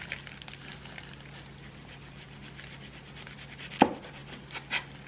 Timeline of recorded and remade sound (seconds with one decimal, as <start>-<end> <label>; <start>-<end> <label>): 0.0-5.1 recorded